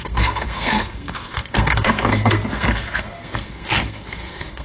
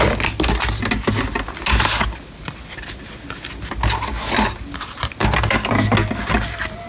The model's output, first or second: first